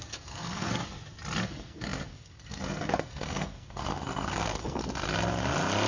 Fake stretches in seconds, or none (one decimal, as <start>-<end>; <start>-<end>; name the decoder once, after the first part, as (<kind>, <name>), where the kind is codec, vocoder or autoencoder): 0.0-0.8 (codec, SNAC); 1.4-4.8